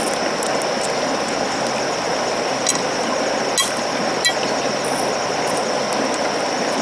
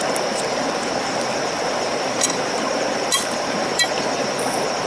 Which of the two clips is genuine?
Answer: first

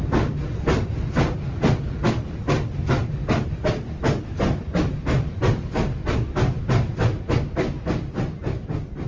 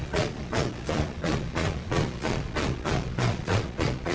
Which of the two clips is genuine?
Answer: first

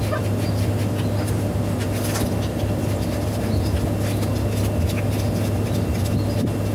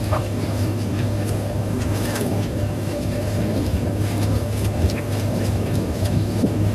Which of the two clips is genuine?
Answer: first